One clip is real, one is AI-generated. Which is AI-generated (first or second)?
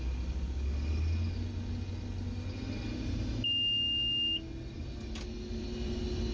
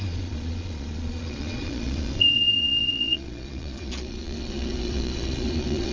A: second